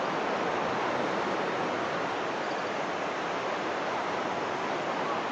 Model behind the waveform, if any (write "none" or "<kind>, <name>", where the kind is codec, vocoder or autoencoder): none